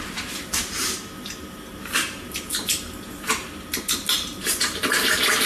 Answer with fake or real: fake